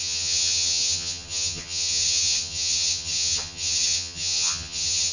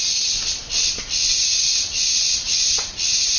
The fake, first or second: first